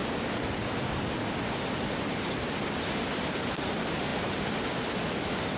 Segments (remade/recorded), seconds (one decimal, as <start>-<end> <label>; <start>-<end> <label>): 0.0-5.6 recorded